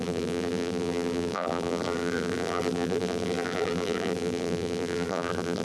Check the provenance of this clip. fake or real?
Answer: fake